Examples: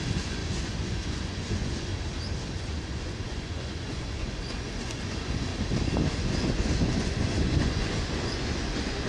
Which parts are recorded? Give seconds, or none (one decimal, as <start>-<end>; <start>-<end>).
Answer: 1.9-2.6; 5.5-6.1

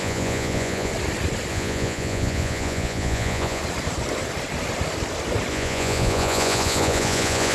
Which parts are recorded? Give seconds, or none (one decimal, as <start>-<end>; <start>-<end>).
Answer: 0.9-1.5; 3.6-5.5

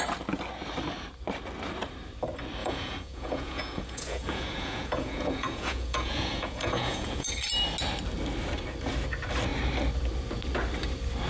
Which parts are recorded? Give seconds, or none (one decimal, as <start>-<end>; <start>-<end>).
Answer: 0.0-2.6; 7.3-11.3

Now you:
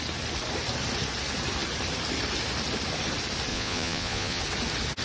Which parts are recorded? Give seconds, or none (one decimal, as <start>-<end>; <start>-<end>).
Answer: 0.0-3.5; 4.4-5.0